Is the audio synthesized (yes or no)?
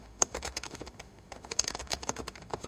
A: yes